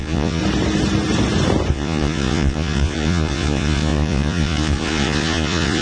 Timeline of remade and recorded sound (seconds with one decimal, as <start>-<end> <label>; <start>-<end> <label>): 0.0-0.4 remade; 0.4-1.7 recorded; 1.7-5.8 remade